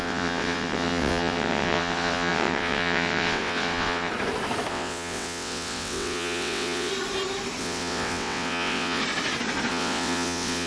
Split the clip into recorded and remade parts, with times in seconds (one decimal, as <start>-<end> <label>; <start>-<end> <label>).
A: 0.0-4.1 remade; 4.1-4.7 recorded; 4.7-6.9 remade; 6.9-7.6 recorded; 7.6-9.0 remade; 9.0-9.7 recorded; 9.7-10.7 remade